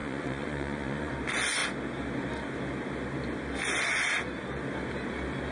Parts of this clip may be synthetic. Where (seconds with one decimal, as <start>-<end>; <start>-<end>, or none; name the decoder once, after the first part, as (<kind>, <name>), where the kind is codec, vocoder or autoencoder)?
0.0-1.1 (vocoder, Vocos)